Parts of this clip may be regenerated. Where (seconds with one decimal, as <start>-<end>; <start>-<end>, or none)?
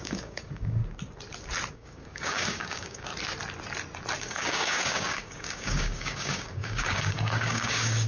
0.0-0.8; 1.7-3.1; 4.2-8.1